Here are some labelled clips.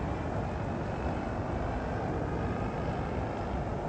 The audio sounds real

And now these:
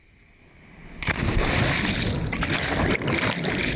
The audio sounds real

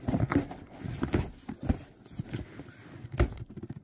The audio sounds real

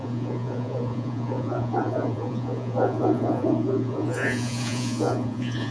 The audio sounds fake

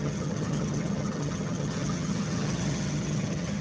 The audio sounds fake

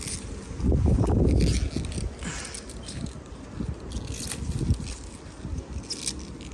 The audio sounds real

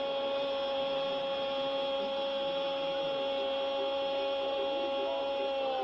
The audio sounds real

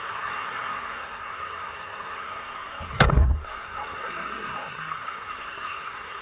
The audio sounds fake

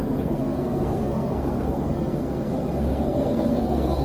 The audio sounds fake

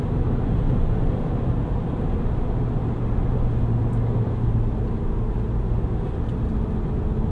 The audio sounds real